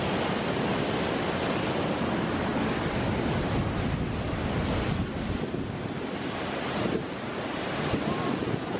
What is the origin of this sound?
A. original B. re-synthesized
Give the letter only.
A